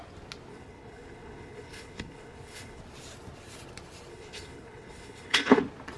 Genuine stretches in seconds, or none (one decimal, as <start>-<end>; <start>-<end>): 0.0-0.5; 2.8-4.1; 5.6-6.0